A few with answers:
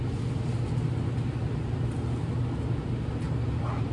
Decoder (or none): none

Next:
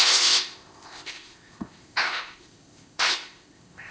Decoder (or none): codec, ZipCodec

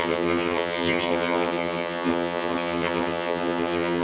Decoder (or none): vocoder, HiFi-GAN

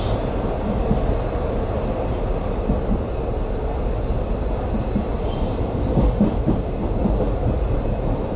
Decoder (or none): none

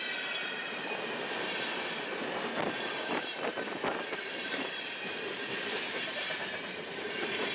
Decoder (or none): vocoder, BigVGAN v2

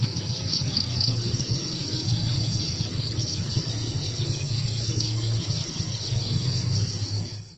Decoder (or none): codec, SNAC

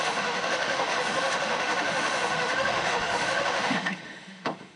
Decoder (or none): autoencoder, DAC-VAE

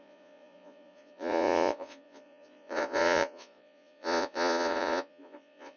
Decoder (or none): vocoder, Vocos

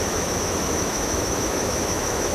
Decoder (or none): autoencoder, DAC-VAE